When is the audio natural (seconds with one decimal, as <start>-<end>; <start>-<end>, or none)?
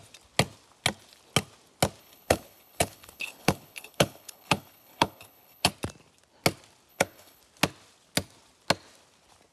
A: 0.0-2.0; 5.7-6.9; 7.4-9.5